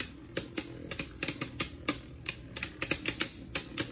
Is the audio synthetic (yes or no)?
no